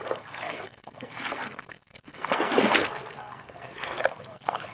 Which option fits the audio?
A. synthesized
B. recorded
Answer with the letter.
A